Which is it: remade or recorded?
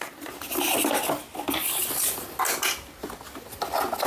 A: recorded